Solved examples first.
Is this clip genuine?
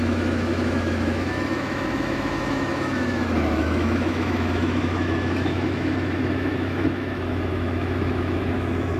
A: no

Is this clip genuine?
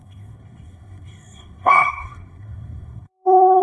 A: no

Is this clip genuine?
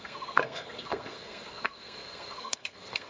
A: no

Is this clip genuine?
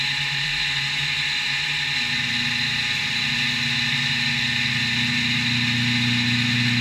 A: yes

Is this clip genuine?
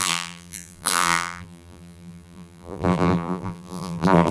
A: no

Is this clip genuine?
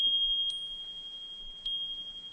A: yes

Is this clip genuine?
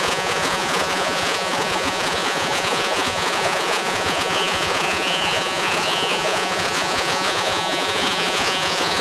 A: no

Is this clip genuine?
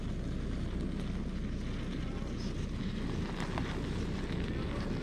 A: yes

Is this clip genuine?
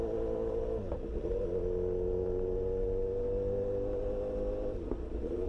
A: yes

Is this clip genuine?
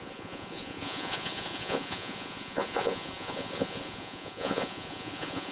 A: no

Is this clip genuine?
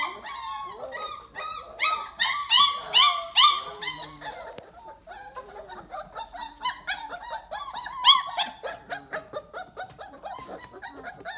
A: yes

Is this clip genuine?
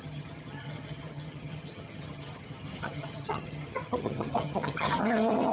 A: no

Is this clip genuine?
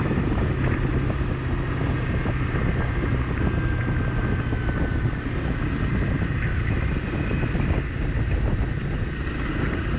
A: yes